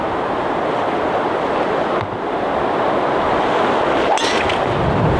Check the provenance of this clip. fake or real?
real